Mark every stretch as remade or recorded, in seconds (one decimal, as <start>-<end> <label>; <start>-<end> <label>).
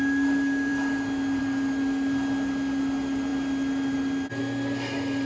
0.0-5.3 recorded